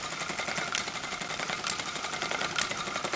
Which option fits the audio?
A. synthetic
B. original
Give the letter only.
B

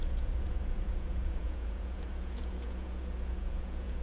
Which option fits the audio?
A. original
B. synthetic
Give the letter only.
B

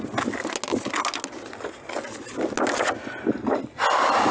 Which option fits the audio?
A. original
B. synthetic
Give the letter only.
A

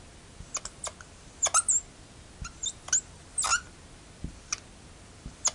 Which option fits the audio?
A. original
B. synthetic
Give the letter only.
A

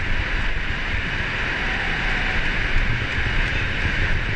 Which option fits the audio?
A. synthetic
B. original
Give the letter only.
B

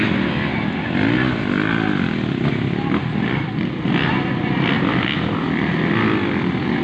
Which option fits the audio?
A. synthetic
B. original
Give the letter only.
B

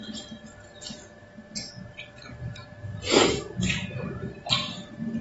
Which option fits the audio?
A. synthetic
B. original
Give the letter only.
B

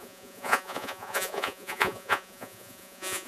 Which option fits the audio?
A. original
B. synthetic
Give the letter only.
B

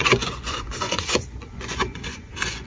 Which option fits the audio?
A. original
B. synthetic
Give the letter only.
B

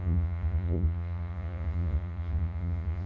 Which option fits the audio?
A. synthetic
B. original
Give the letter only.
A